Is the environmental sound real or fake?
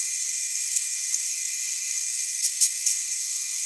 fake